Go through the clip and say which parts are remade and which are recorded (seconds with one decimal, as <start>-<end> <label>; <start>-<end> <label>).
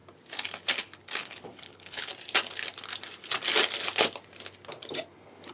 0.0-1.2 recorded; 1.2-2.1 remade; 2.1-5.5 recorded